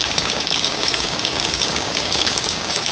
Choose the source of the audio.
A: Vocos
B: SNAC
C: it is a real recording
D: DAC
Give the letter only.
D